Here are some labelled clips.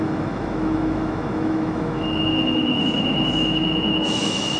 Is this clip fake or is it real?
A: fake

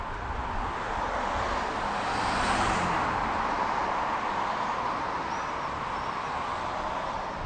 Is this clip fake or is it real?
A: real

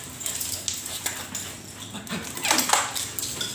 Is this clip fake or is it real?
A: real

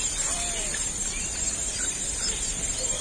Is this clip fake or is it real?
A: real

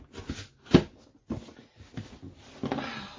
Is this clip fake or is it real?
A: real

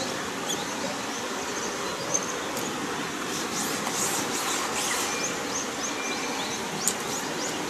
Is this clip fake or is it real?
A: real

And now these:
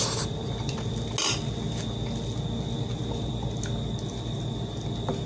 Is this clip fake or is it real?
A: real